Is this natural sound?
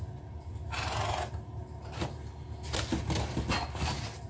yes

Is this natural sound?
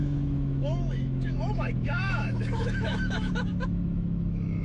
no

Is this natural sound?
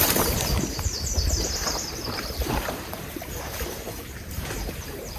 no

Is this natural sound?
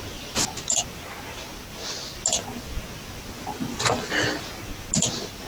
yes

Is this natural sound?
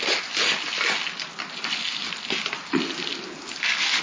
yes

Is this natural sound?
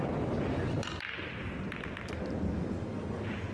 yes